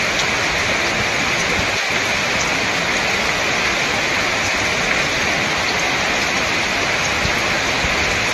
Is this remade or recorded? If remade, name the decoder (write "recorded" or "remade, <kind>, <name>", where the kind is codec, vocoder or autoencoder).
recorded